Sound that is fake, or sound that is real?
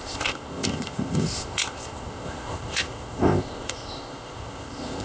fake